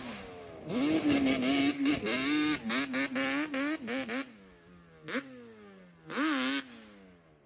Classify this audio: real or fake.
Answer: real